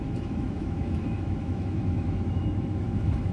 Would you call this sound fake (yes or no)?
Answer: yes